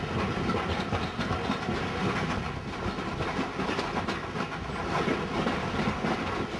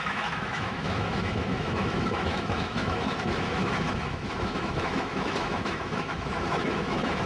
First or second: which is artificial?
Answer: second